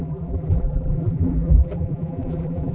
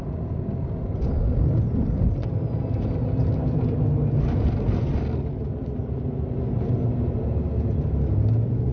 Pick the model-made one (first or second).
first